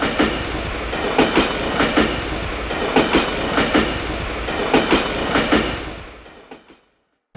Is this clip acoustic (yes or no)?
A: yes